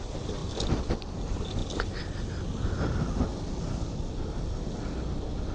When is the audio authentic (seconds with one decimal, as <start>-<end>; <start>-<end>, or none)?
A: 0.0-5.5